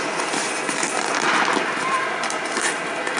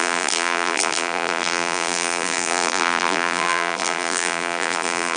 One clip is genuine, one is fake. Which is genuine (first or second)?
first